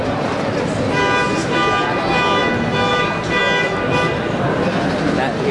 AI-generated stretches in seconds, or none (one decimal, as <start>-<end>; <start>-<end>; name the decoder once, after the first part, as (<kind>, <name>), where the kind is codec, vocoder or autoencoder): none